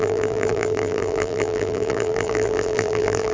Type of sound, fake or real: fake